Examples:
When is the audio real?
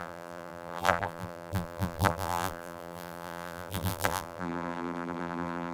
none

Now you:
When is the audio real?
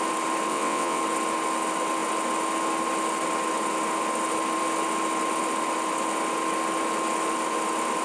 0.0-0.5; 1.0-8.0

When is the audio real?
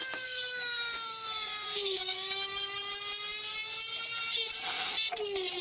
2.8-5.6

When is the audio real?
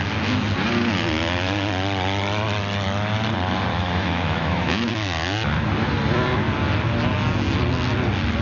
0.0-3.7; 4.9-8.4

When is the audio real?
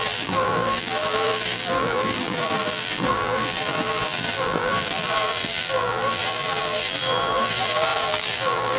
none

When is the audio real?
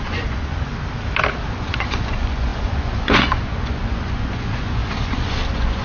0.7-1.5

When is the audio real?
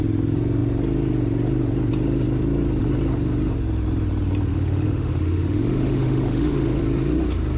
0.0-4.5; 6.8-7.6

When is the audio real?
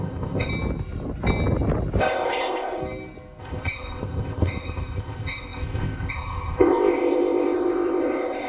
0.5-2.0; 2.8-3.4